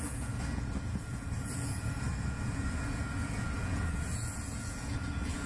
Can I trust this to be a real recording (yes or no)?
no